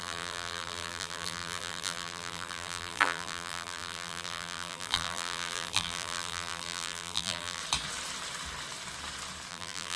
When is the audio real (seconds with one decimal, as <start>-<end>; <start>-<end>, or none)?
7.6-9.5